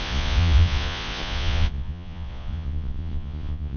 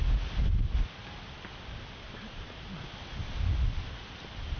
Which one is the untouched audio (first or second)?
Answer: second